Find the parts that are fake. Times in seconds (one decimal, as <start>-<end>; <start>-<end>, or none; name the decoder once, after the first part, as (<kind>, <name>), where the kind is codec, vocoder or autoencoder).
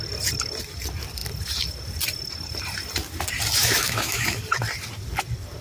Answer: 3.6-4.4 (autoencoder, DAC-VAE)